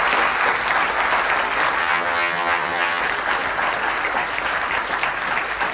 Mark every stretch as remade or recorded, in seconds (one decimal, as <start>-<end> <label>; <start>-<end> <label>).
0.0-1.8 recorded; 1.8-3.0 remade; 3.0-5.7 recorded